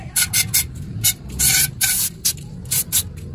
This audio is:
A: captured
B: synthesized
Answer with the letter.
A